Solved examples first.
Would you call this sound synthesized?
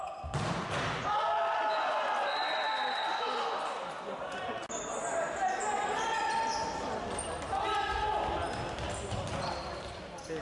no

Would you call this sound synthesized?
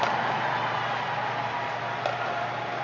no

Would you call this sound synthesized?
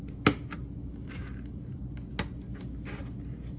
no